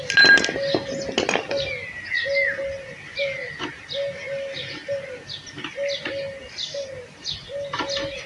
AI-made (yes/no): no